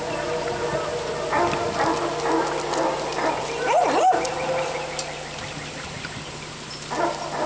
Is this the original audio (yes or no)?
yes